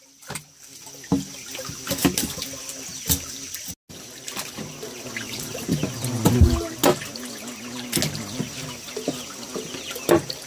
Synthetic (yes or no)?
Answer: no